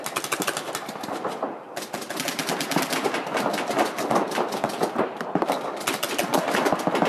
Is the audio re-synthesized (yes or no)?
no